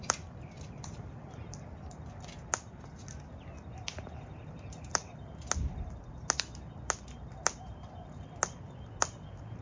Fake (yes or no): no